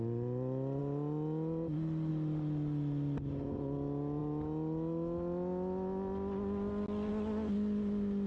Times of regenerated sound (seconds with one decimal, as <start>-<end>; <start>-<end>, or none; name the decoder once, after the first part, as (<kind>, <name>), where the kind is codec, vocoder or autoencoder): none